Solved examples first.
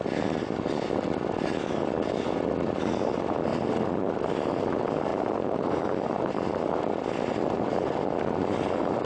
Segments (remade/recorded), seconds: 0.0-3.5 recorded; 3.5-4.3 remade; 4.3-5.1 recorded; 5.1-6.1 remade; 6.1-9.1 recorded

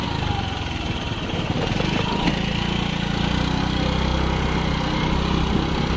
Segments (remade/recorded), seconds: 0.0-6.0 recorded